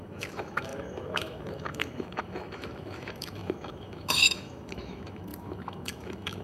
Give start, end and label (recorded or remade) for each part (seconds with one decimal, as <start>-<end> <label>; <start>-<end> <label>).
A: 0.0-6.4 remade